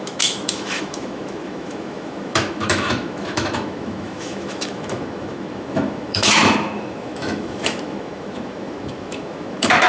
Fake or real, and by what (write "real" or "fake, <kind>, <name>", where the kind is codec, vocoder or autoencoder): fake, autoencoder, DAC-VAE